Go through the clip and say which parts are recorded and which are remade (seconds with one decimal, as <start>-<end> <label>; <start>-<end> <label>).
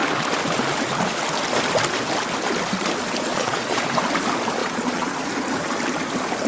0.0-3.3 recorded; 3.3-3.8 remade; 3.8-4.6 recorded; 4.6-5.2 remade; 5.2-6.5 recorded